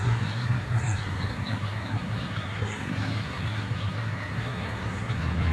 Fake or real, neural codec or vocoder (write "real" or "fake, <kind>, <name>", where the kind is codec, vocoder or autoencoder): fake, codec, SNAC